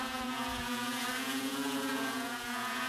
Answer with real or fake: fake